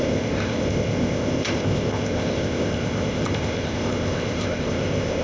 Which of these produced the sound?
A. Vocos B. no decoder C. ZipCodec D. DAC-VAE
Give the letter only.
C